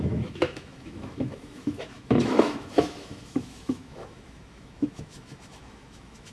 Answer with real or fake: fake